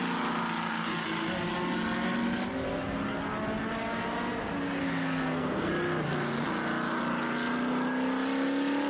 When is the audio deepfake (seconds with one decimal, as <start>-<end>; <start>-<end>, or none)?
4.8-5.7